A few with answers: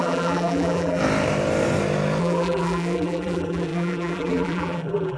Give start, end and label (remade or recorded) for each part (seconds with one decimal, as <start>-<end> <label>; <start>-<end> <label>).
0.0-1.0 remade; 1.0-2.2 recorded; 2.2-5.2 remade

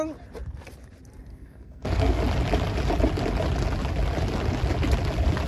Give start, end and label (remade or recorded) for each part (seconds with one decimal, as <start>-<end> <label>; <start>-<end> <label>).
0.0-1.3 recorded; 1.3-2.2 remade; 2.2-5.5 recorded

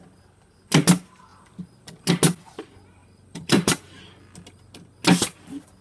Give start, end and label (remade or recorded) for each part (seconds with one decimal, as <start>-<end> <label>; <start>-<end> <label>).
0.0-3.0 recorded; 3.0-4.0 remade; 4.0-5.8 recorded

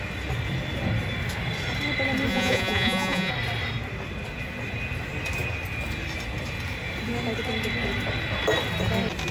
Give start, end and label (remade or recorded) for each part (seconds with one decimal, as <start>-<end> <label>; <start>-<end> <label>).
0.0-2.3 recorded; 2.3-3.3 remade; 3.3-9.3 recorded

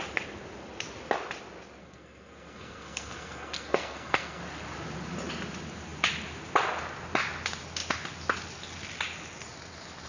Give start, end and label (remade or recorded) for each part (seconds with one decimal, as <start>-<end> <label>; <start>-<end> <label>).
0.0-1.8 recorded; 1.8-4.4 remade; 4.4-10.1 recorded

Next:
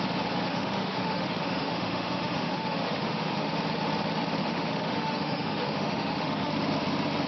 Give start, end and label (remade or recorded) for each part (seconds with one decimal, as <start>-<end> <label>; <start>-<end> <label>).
0.0-0.5 recorded; 0.5-3.5 remade; 3.5-4.4 recorded; 4.4-6.5 remade; 6.5-7.3 recorded